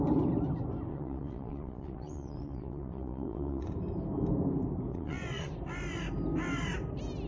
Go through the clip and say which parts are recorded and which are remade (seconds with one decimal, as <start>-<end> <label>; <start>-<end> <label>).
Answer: 0.0-0.9 recorded; 0.9-3.7 remade; 3.7-4.9 recorded; 4.9-5.5 remade; 5.5-7.3 recorded